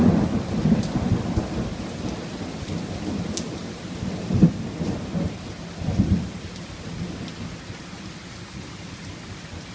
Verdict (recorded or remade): recorded